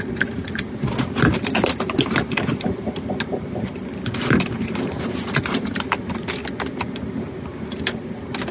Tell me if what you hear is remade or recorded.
recorded